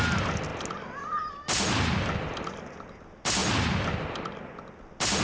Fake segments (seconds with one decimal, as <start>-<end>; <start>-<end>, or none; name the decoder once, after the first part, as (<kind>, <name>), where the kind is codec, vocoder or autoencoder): none